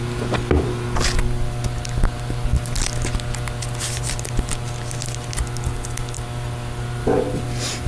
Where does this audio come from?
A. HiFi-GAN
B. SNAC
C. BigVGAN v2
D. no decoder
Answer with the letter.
D